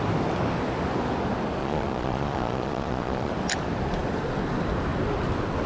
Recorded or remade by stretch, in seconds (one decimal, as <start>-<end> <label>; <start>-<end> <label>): 0.0-1.6 recorded; 1.6-3.3 remade; 3.3-5.7 recorded